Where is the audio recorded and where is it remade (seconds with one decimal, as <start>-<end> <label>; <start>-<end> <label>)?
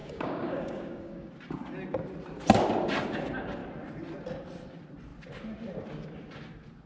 0.0-1.3 remade; 1.3-6.9 recorded